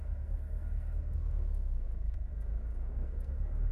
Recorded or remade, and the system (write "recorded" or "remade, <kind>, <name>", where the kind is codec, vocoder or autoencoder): remade, codec, SNAC